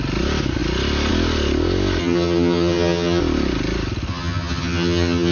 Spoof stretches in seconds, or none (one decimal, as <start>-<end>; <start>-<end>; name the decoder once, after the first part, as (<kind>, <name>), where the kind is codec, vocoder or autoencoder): 2.0-3.2 (vocoder, HiFi-GAN); 4.1-5.3